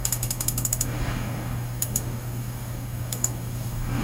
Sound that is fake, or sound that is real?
fake